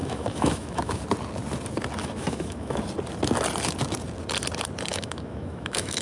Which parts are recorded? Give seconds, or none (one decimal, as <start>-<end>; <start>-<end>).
1.0-2.0; 2.8-4.9